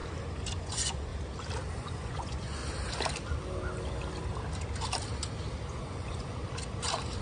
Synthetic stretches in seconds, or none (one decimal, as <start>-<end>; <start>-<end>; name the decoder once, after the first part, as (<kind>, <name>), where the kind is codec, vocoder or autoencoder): 0.6-1.1 (vocoder, Vocos); 1.7-2.6; 5.7-6.4